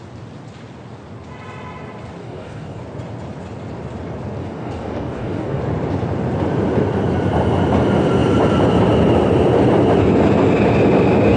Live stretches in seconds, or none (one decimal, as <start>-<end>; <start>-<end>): 0.0-2.2; 2.8-4.4; 5.6-11.4